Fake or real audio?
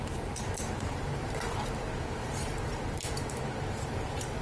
fake